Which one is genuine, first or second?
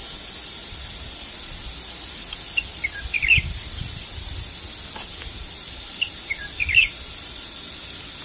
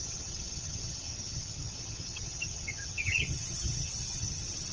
first